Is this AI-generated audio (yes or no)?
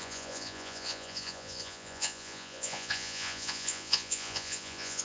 yes